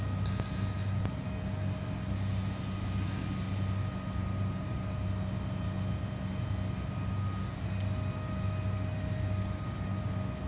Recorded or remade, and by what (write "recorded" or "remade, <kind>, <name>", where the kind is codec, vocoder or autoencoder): recorded